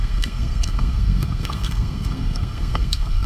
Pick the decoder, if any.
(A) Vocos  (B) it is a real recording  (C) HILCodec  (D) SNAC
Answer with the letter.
D